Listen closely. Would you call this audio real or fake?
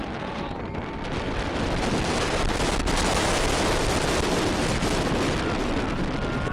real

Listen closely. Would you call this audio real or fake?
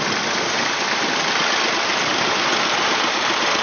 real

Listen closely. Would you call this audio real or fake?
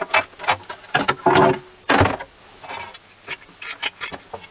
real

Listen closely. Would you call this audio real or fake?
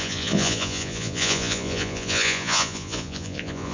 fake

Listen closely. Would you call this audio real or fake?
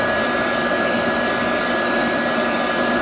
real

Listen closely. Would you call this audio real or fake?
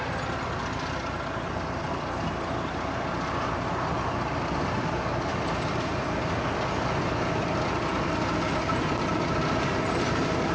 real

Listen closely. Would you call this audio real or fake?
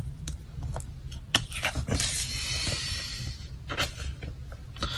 real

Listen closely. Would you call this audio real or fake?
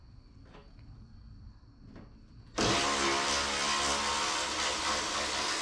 real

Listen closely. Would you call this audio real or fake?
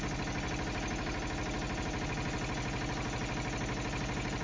real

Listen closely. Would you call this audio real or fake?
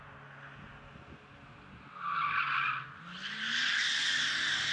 real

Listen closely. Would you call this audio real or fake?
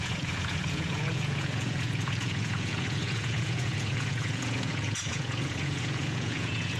fake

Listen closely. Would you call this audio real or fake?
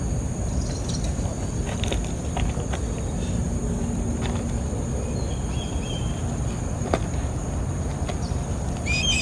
real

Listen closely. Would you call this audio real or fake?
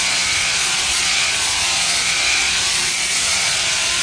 fake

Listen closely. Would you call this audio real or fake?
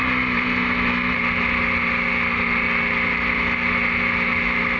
real